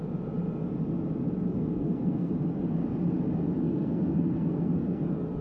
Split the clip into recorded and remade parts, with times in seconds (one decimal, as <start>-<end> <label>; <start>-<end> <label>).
0.0-1.5 recorded; 1.5-2.3 remade; 2.3-3.6 recorded; 3.6-5.0 remade; 5.0-5.4 recorded

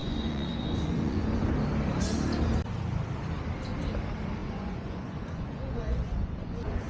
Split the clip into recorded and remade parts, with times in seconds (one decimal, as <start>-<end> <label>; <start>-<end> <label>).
0.0-1.5 remade; 1.5-4.4 recorded; 4.4-6.9 remade

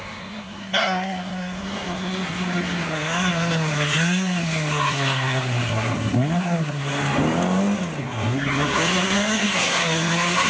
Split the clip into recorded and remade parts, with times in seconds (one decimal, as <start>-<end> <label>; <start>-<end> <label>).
0.0-7.0 remade; 7.0-8.0 recorded; 8.0-10.5 remade

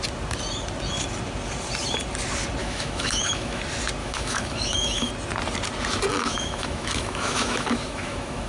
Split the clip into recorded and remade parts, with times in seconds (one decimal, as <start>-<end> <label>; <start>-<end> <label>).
0.0-2.6 recorded; 2.6-3.6 remade; 3.6-4.0 recorded; 4.0-5.1 remade; 5.1-6.1 recorded; 6.1-8.5 remade

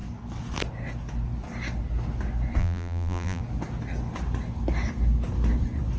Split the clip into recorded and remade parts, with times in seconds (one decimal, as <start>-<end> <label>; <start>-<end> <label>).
0.0-2.6 recorded; 2.6-3.4 remade; 3.4-6.0 recorded